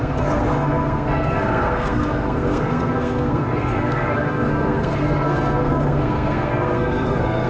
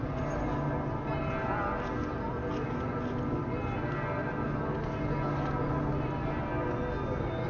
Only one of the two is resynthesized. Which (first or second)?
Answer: first